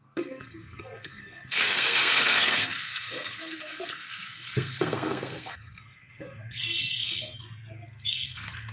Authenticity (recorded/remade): remade